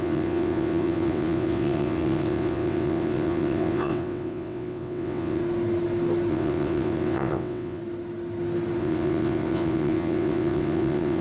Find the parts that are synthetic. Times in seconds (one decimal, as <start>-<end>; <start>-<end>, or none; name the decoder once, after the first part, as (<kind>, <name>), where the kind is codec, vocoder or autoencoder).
0.0-5.4 (vocoder, WaveNeXt); 6.3-7.8; 8.8-11.2